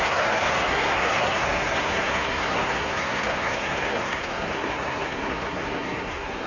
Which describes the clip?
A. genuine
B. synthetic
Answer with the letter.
B